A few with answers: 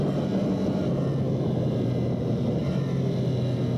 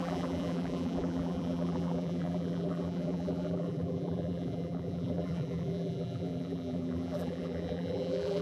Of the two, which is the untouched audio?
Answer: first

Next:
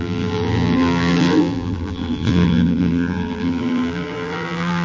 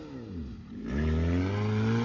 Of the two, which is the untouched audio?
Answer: second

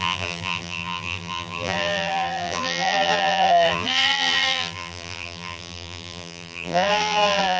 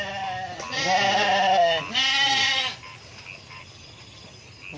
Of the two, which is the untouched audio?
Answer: second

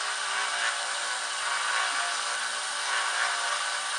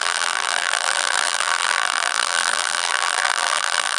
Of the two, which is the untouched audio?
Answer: first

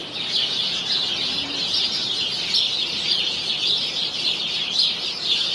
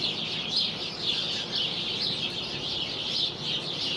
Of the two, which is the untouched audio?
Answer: second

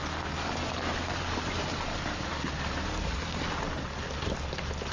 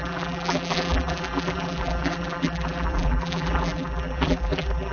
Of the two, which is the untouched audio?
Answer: first